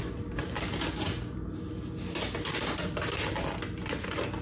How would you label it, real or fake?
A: real